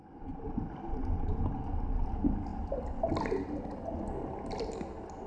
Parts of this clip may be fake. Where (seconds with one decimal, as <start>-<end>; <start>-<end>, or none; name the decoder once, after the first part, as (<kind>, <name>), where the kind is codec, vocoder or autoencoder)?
none